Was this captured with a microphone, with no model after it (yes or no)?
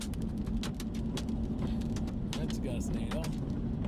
yes